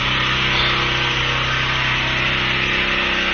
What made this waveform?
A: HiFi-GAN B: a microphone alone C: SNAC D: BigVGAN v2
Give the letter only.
B